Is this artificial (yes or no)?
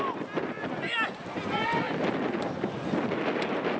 no